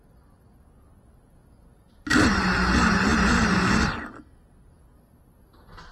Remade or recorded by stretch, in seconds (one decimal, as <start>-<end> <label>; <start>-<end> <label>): 0.0-5.9 recorded